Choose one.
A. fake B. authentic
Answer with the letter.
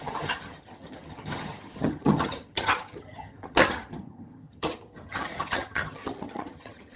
A